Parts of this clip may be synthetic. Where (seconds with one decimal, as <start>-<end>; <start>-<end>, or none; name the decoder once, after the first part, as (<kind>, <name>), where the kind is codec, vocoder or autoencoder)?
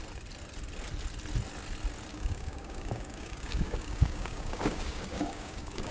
2.1-5.9 (codec, DAC)